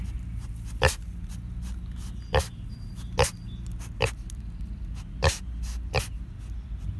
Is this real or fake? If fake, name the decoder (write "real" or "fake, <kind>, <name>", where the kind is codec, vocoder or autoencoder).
real